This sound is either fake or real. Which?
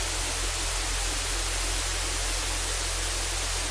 real